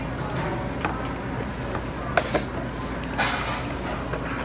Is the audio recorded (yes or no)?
yes